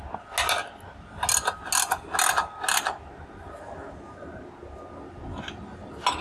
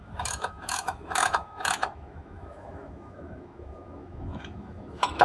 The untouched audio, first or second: first